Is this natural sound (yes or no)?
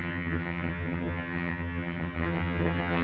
no